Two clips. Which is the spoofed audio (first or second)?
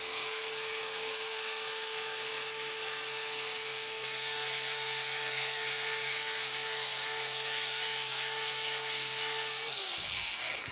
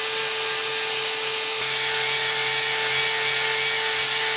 first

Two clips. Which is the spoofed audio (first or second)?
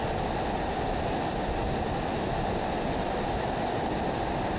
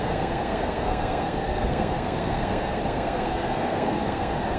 second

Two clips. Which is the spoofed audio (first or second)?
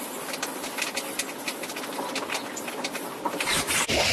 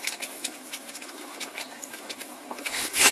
second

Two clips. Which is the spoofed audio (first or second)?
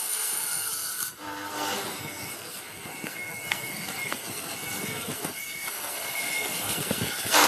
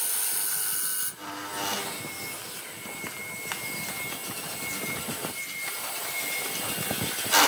first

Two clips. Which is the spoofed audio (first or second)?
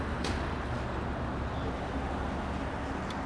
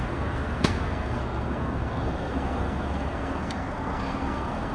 second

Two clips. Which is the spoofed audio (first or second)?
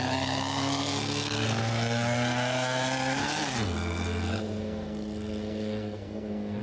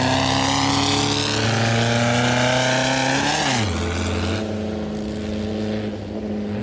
first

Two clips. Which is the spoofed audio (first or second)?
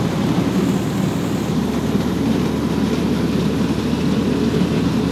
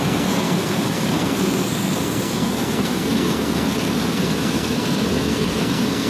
second